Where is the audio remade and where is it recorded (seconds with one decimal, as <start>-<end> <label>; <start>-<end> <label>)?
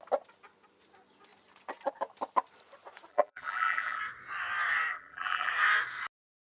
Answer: 0.0-3.1 recorded; 3.1-4.0 remade; 4.0-4.9 recorded; 4.9-5.5 remade; 5.5-6.6 recorded